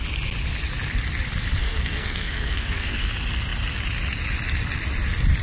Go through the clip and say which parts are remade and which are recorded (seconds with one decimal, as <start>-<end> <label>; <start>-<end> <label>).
0.0-1.6 recorded; 1.6-3.1 remade; 3.1-5.4 recorded